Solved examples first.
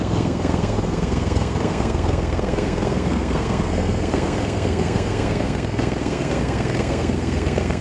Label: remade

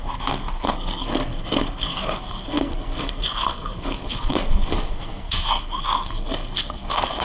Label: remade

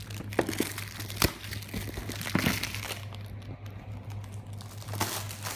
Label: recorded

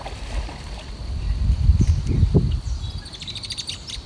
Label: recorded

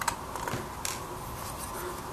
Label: recorded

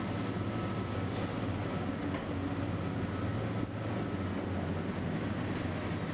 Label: recorded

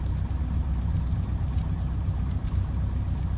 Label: recorded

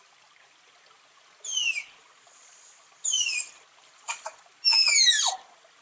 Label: recorded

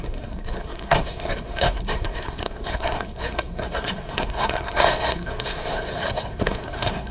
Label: remade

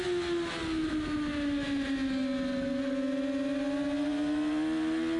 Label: recorded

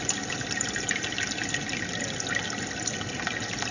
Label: recorded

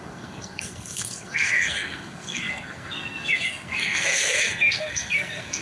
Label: remade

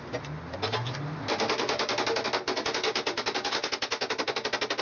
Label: recorded